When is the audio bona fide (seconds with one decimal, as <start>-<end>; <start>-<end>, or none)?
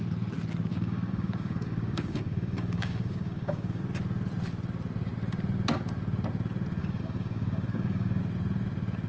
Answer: 0.0-0.7; 3.8-6.8; 8.2-9.1